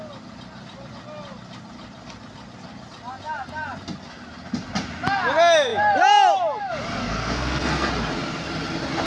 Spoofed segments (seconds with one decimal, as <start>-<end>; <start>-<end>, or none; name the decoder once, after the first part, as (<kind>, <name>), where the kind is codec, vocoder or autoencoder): 7.0-7.9 (codec, SNAC)